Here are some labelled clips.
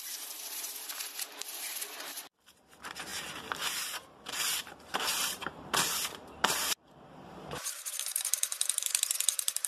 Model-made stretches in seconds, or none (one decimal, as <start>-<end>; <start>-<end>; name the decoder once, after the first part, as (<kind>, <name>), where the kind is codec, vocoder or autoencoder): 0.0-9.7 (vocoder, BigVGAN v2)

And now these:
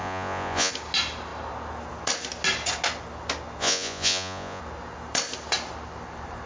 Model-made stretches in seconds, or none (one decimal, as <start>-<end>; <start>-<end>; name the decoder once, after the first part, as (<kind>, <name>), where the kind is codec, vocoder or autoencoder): 0.0-0.7 (vocoder, Vocos); 3.6-4.6

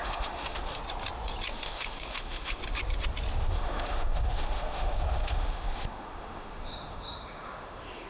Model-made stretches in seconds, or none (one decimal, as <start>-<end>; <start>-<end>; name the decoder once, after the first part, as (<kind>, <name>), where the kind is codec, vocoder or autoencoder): 0.0-0.8 (autoencoder, DAC-VAE); 1.5-2.6; 3.4-8.1

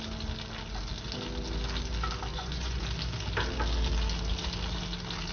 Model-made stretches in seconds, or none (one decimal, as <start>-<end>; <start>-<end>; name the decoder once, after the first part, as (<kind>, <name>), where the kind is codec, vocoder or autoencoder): 2.3-2.8 (vocoder, Vocos)

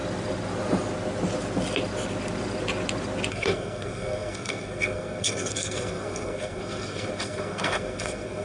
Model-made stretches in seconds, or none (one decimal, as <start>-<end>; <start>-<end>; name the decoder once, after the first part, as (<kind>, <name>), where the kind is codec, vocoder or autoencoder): 3.3-8.4 (codec, SNAC)

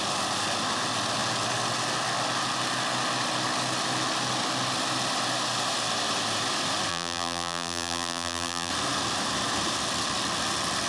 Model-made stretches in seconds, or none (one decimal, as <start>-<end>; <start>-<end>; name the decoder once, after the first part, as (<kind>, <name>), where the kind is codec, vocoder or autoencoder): 6.9-8.7 (vocoder, BigVGAN v2)

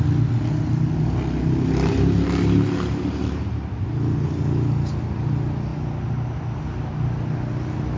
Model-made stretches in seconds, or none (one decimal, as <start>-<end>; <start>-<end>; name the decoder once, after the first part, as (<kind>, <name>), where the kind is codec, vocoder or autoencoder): none